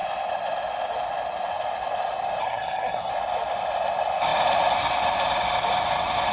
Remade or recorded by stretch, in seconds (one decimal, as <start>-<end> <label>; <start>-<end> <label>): 0.0-2.4 recorded; 2.4-3.1 remade; 3.1-6.3 recorded